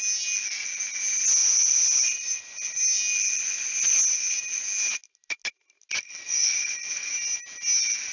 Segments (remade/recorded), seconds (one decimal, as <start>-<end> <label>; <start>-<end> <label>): 0.0-1.4 recorded; 1.4-2.5 remade; 2.5-6.3 recorded; 6.3-7.1 remade; 7.1-8.1 recorded